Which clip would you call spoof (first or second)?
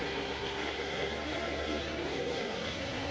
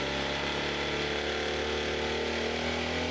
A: first